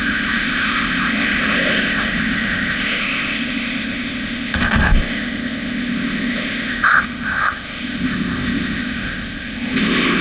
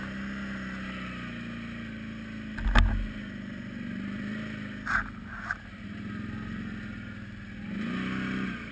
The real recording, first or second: second